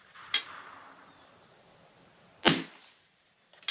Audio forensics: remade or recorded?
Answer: recorded